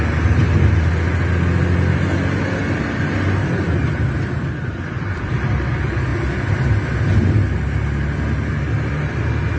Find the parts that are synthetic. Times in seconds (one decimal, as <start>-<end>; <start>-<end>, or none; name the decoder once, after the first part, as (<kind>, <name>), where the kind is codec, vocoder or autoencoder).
none